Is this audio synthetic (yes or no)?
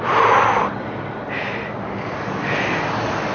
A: no